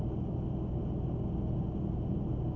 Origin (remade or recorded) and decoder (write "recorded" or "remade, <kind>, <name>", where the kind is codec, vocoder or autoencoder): recorded